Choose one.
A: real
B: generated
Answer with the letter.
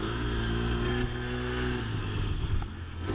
B